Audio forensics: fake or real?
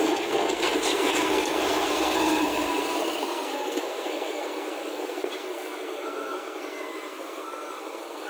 fake